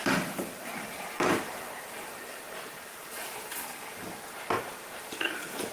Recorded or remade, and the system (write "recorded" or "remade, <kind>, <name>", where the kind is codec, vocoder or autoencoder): remade, vocoder, BigVGAN v2